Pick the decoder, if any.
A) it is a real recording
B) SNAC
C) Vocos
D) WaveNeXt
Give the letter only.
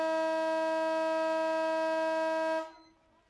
A